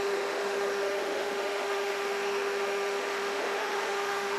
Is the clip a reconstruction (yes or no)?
yes